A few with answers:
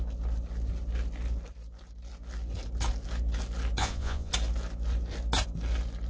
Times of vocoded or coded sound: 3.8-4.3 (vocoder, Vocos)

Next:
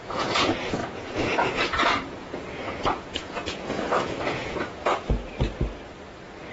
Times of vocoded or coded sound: 0.0-4.9 (vocoder, Vocos)

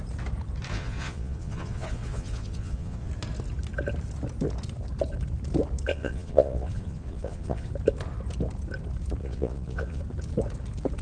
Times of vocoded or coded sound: 0.7-3.1 (vocoder, Vocos); 5.9-7.7; 9.2-10.0

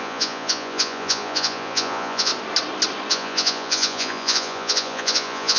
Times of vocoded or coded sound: 0.0-2.3 (vocoder, Vocos); 3.1-5.6

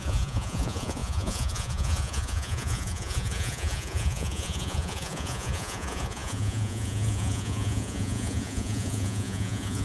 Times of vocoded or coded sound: 0.0-9.8 (vocoder, Vocos)